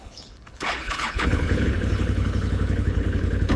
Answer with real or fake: fake